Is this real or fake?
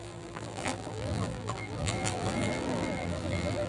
fake